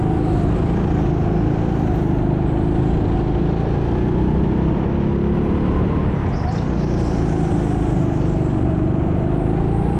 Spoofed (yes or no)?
no